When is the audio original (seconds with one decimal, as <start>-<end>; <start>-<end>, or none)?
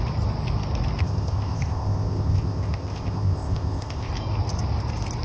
0.0-1.0; 4.1-5.2